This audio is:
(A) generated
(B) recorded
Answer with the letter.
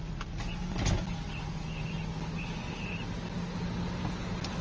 B